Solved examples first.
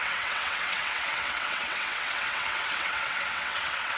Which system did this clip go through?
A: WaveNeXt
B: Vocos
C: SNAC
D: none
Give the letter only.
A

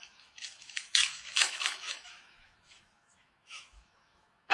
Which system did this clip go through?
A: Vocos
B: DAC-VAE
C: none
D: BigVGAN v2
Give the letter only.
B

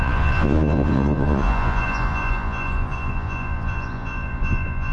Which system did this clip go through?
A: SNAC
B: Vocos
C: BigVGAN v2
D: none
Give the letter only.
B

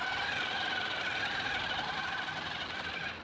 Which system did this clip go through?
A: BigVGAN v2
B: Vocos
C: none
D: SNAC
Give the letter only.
C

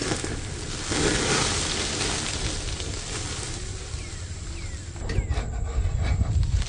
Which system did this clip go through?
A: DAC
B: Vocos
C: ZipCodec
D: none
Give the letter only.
D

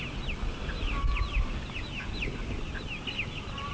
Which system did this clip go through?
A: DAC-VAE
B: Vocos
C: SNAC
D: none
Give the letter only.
D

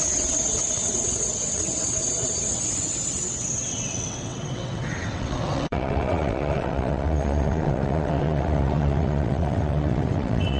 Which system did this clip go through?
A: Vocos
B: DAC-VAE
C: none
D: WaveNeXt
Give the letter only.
D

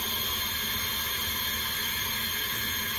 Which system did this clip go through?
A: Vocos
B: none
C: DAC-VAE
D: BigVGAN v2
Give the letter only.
B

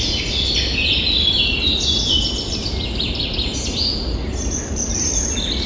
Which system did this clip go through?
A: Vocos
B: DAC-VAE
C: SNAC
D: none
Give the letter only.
D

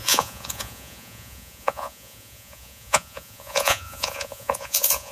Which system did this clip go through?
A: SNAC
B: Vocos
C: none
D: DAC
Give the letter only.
B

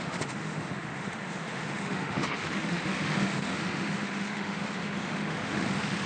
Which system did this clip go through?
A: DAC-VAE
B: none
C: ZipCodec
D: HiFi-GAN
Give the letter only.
A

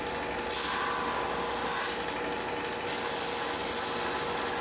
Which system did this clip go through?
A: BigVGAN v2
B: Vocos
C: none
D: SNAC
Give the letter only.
C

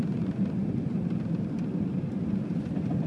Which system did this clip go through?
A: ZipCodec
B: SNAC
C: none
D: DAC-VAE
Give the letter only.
C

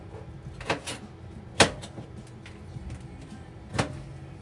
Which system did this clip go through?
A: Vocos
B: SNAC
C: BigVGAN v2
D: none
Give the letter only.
D